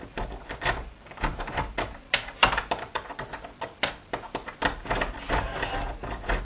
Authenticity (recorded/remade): recorded